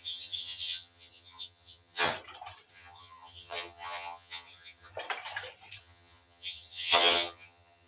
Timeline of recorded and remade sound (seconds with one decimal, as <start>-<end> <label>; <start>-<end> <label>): 0.0-2.1 remade; 2.1-2.7 recorded; 2.7-4.9 remade; 4.9-5.8 recorded; 5.8-7.9 remade